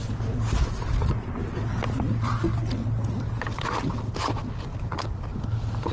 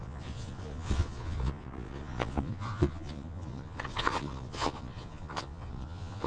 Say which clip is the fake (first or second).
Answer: second